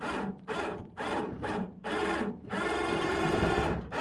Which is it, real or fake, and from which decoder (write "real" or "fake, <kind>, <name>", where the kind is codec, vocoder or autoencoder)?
fake, vocoder, BigVGAN v2